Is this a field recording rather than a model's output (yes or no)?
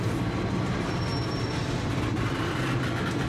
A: yes